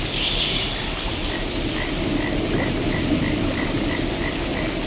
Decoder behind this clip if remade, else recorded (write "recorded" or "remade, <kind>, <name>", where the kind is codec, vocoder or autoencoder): recorded